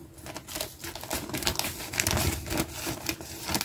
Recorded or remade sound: recorded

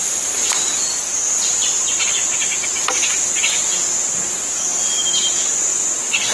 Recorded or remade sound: recorded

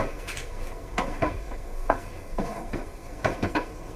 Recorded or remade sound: remade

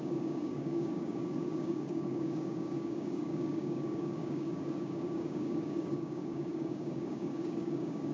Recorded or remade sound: remade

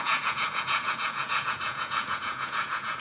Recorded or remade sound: remade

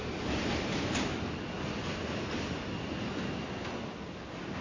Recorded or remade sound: recorded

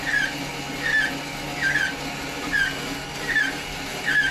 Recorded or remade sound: recorded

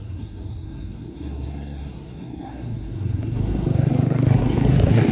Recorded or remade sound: remade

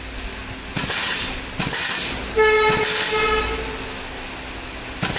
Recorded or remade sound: recorded